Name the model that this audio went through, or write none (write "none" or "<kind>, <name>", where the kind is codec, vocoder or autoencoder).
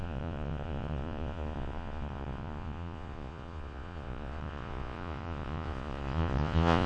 vocoder, Vocos